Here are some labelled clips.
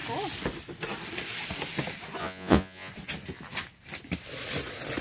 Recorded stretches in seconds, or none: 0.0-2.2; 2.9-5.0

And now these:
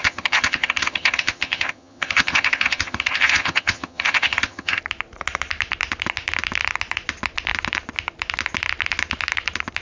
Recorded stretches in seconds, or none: 4.8-9.8

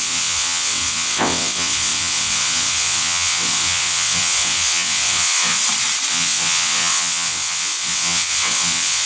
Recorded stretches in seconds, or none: 5.6-6.1

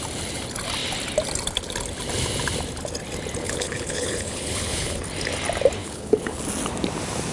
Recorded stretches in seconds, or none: 0.0-3.4; 5.0-5.8; 6.4-7.3